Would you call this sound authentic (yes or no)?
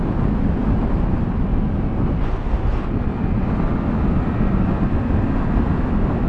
yes